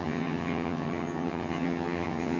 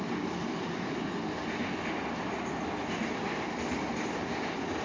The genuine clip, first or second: second